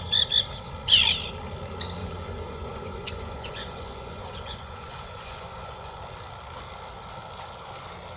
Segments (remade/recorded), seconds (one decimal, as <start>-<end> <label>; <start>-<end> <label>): 0.0-2.0 recorded; 2.0-6.0 remade; 6.0-8.2 recorded